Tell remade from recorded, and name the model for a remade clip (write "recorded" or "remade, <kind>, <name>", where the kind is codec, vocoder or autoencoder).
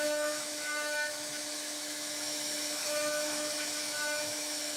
remade, autoencoder, DAC-VAE